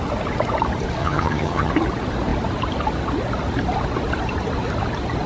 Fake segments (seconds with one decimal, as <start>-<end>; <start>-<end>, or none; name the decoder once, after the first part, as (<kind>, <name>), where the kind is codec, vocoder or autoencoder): 1.0-1.7 (vocoder, HiFi-GAN)